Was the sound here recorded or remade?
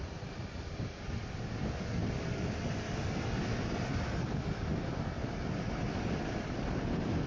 recorded